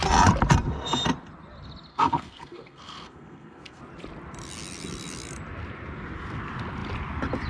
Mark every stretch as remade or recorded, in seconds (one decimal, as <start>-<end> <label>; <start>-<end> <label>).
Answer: 0.0-1.9 recorded; 1.9-3.8 remade; 3.8-7.5 recorded